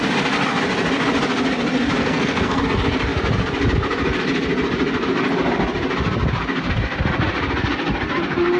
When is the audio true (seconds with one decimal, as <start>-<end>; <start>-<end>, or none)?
0.0-2.0; 2.6-8.6